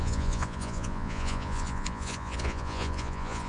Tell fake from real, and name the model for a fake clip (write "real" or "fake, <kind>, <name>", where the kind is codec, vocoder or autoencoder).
fake, vocoder, Vocos